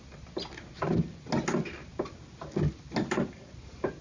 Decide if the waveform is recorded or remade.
recorded